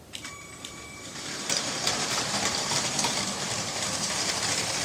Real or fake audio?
fake